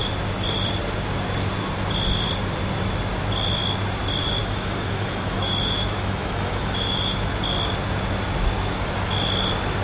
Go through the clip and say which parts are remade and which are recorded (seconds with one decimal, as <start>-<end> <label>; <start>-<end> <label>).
0.0-4.4 recorded; 4.4-7.3 remade; 7.3-9.8 recorded